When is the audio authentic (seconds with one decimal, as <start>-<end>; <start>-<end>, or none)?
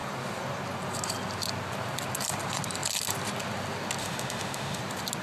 0.0-4.0; 4.8-5.2